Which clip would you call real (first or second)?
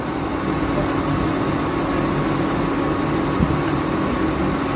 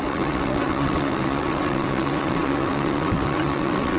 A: first